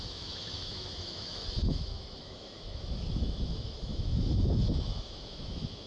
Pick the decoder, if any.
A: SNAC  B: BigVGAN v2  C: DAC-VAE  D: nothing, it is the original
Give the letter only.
C